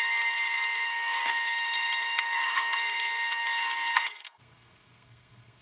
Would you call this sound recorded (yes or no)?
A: no